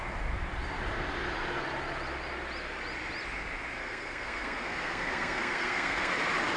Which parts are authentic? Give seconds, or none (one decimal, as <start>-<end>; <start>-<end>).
0.0-3.8; 6.1-6.6